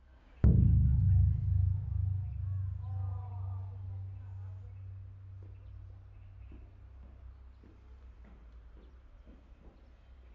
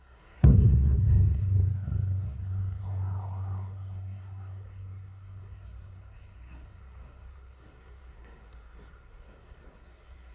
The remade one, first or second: second